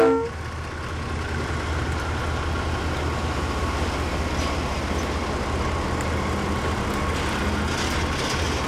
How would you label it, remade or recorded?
recorded